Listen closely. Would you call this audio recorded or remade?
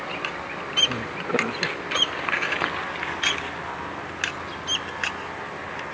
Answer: recorded